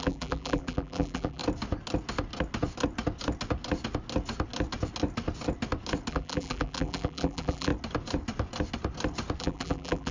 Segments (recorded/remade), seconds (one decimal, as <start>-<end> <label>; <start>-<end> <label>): 0.0-1.4 remade; 1.4-6.1 recorded; 6.1-7.7 remade; 7.7-9.4 recorded; 9.4-10.1 remade